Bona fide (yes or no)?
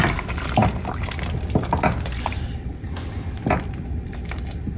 yes